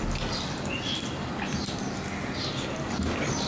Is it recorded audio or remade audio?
recorded